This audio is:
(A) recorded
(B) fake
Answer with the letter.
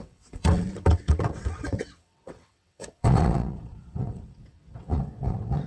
B